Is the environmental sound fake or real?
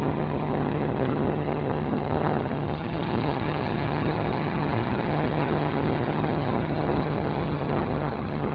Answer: fake